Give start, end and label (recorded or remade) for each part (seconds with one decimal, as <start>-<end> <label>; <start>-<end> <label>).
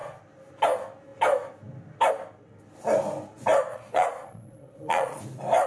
0.0-3.7 recorded; 3.7-5.2 remade; 5.2-5.7 recorded